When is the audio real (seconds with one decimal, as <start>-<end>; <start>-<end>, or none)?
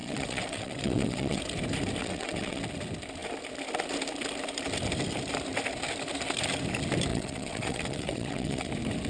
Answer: 1.4-2.0; 2.6-7.1; 8.7-9.1